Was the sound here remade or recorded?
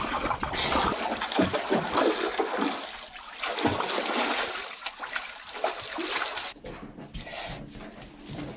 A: recorded